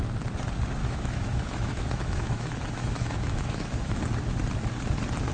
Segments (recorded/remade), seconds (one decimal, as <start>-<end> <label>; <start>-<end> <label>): 0.0-0.8 recorded; 0.8-4.0 remade; 4.0-5.3 recorded